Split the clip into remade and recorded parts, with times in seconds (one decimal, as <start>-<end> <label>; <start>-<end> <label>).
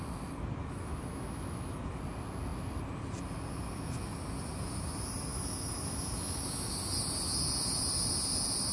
0.0-0.6 recorded; 0.6-2.0 remade; 2.0-5.3 recorded; 5.3-6.7 remade; 6.7-8.7 recorded